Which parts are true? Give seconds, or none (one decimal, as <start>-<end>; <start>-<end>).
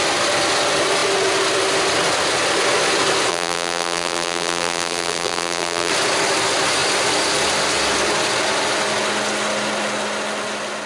0.0-3.3; 5.9-10.9